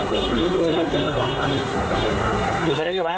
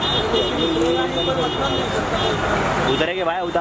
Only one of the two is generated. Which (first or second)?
first